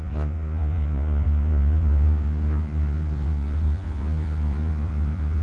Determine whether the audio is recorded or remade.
remade